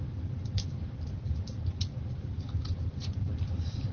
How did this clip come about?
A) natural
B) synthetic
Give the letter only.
A